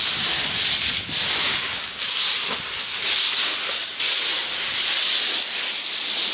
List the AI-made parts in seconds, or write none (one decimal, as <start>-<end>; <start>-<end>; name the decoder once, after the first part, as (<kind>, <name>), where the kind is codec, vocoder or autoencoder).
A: 1.5-2.2 (codec, DAC)